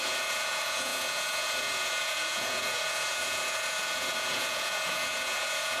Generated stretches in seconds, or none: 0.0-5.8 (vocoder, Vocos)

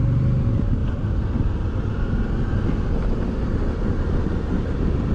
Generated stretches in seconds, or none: none

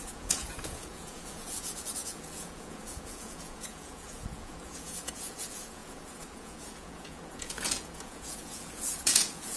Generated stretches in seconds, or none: 0.0-9.6 (vocoder, Vocos)

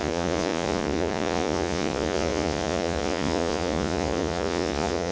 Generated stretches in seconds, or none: 0.0-5.1 (vocoder, Vocos)

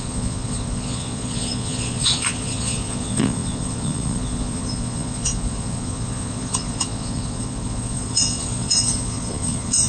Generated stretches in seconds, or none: 0.0-9.9 (vocoder, Vocos)

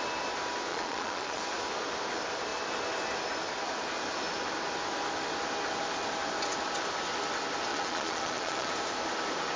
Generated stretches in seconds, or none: 0.7-1.4 (vocoder, Vocos); 7.7-8.7

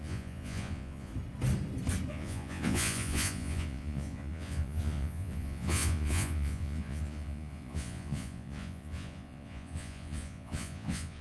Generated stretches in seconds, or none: 0.0-1.1 (vocoder, Vocos); 2.1-11.2